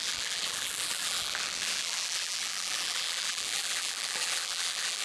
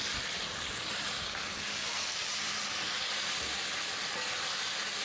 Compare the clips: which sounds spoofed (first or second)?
first